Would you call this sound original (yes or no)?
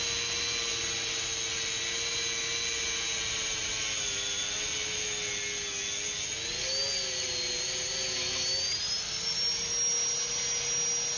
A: yes